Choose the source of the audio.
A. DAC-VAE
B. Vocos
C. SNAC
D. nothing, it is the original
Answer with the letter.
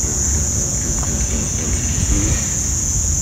B